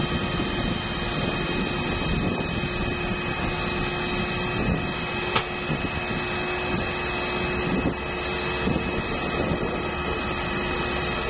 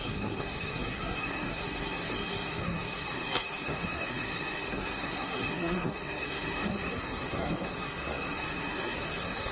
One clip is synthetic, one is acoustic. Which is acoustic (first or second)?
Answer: first